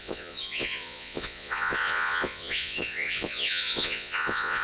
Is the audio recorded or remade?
remade